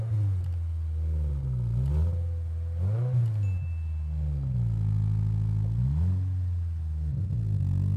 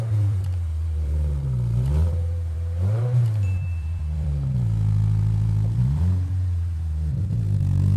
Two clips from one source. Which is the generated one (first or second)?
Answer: second